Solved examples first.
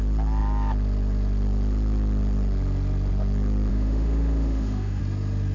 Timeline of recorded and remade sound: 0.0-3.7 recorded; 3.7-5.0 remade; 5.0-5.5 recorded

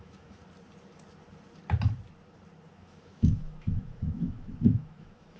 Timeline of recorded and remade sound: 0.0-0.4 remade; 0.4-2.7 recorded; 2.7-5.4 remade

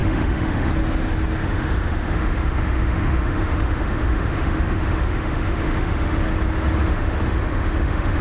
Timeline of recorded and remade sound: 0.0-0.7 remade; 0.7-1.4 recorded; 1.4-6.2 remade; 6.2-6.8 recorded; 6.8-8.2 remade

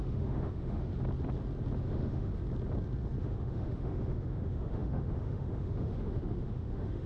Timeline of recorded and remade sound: 0.0-0.9 remade; 0.9-1.8 recorded; 1.8-2.3 remade; 2.3-3.2 recorded; 3.2-7.1 remade

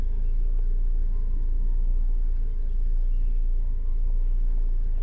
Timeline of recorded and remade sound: 0.0-5.0 recorded

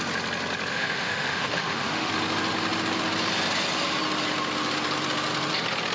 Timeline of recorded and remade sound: 0.0-0.7 recorded; 0.7-2.1 remade; 2.1-5.9 recorded

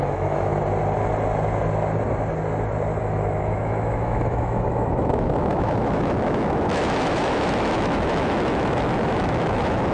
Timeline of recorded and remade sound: 0.0-0.5 remade; 0.5-3.0 recorded; 3.0-9.9 remade